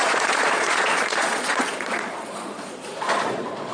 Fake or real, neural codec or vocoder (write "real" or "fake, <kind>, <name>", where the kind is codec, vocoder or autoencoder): fake, vocoder, Vocos